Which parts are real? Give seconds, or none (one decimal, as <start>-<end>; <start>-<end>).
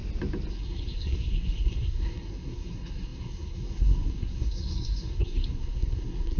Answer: 0.0-0.5